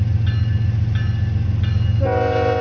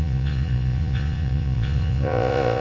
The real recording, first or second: first